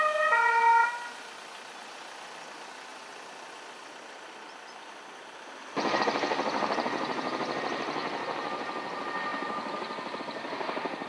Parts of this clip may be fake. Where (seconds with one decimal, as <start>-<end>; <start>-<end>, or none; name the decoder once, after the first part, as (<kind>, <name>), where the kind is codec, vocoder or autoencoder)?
none